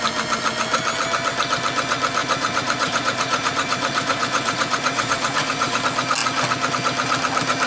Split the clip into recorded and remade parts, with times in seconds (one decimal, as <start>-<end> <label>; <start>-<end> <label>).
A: 0.0-2.2 recorded; 2.2-5.8 remade; 5.8-7.7 recorded